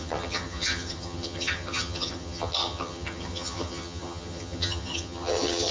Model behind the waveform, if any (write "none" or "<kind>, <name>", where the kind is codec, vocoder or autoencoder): vocoder, HiFi-GAN